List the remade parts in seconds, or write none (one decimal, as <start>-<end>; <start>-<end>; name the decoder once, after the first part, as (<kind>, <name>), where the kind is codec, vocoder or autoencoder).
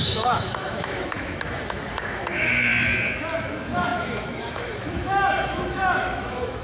0.0-2.7 (autoencoder, DAC-VAE); 3.4-6.6